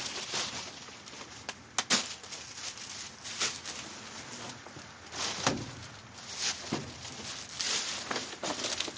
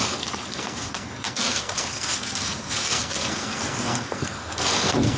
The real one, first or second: first